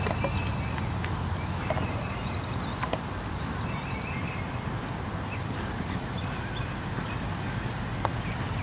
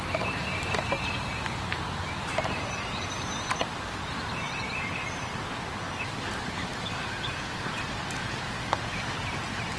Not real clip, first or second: second